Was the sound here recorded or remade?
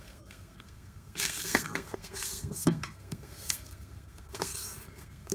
remade